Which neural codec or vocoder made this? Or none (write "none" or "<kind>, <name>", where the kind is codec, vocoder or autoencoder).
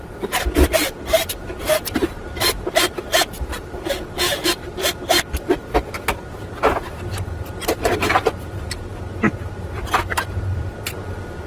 vocoder, BigVGAN v2